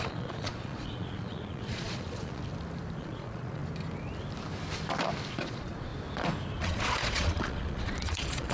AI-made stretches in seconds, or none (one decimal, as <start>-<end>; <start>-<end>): 0.0-2.4; 3.0-3.6; 5.3-5.9; 6.6-8.5

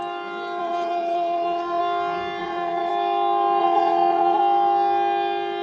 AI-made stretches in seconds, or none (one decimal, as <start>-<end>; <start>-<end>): 0.6-1.8; 2.4-2.9; 3.6-4.4

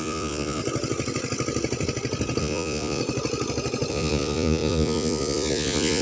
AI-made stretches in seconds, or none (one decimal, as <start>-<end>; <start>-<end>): 0.0-0.6; 2.4-3.0; 3.9-6.0

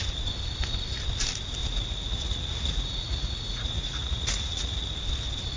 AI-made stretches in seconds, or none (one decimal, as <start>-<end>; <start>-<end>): 1.6-5.0

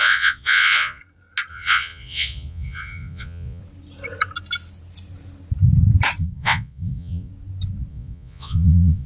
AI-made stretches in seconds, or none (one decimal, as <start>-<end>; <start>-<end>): 0.0-1.0; 1.5-3.6; 6.2-7.3; 7.9-9.1

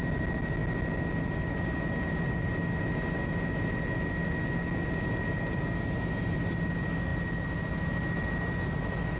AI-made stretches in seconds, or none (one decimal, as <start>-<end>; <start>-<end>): none

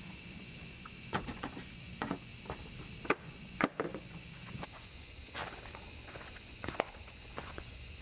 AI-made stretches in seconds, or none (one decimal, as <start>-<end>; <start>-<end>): 0.0-2.3; 3.2-5.4; 5.9-8.0